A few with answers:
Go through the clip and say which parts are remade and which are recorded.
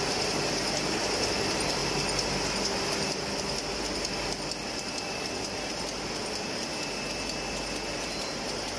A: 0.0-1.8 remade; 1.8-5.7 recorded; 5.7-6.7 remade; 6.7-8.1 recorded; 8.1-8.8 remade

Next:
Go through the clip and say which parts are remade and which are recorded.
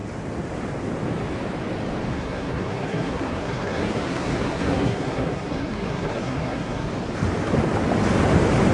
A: 0.0-2.1 recorded; 2.1-6.9 remade; 6.9-8.7 recorded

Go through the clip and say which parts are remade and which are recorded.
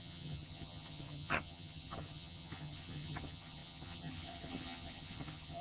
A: 0.0-5.6 remade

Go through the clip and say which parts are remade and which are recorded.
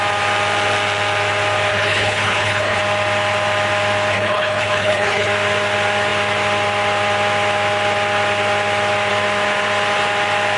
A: 0.0-1.7 recorded; 1.7-2.8 remade; 2.8-4.1 recorded; 4.1-5.3 remade; 5.3-10.6 recorded